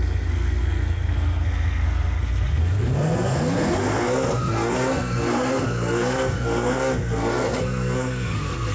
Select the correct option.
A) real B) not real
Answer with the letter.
B